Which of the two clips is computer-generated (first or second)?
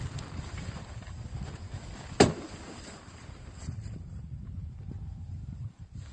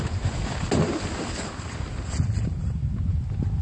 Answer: first